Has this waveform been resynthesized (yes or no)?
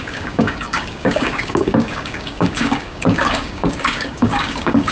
yes